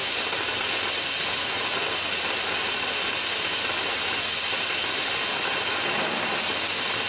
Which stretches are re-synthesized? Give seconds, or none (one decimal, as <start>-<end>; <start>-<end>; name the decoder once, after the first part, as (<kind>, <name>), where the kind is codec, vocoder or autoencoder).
none